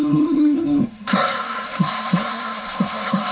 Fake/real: fake